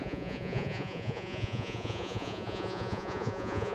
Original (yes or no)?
no